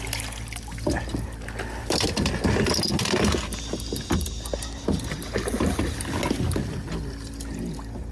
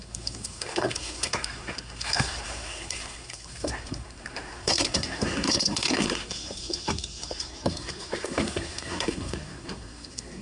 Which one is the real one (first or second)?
first